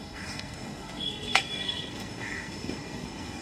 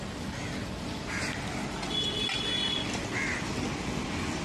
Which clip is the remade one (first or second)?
first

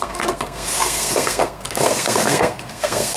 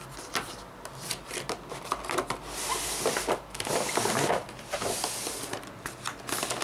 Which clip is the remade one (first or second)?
first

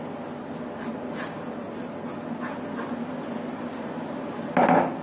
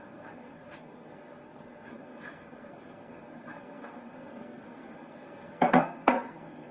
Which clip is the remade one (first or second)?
second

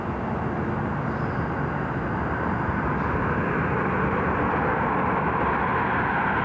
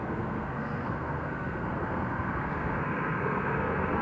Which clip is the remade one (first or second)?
second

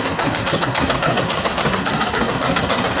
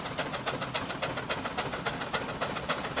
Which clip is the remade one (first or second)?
first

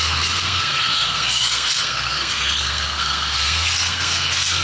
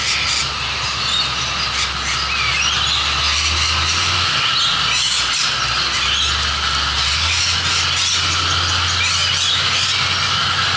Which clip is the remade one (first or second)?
first